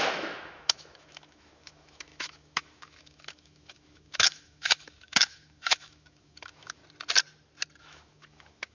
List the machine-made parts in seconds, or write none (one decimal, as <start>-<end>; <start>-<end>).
0.0-6.8; 7.8-8.7